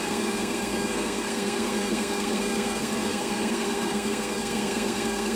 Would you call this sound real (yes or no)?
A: no